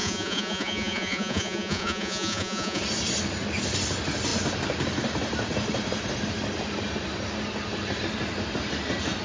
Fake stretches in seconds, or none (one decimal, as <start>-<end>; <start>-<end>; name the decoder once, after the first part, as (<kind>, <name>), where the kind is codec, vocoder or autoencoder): 0.0-2.8 (vocoder, Vocos)